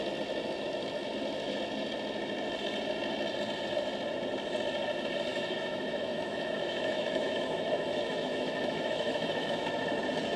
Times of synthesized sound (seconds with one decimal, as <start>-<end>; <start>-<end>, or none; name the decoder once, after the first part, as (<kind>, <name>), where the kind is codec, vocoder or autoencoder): 5.3-9.8 (autoencoder, DAC-VAE)